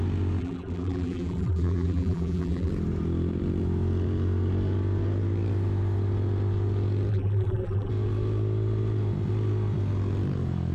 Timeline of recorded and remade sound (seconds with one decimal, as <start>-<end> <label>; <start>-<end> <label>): 0.0-0.4 recorded; 0.4-2.7 remade; 2.7-7.1 recorded; 7.1-7.9 remade; 7.9-10.7 recorded